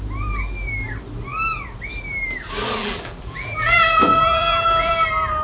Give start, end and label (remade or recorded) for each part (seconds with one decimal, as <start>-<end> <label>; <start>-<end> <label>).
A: 0.0-2.8 recorded; 2.8-4.9 remade; 4.9-5.4 recorded